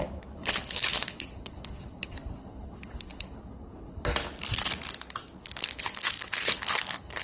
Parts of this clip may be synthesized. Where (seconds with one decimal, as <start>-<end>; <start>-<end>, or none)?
0.0-4.1; 5.4-7.2